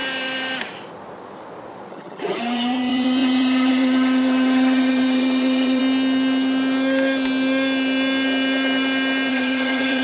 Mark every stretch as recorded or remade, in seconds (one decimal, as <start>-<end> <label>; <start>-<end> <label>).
0.0-1.9 recorded; 1.9-5.8 remade; 5.8-9.3 recorded; 9.3-10.0 remade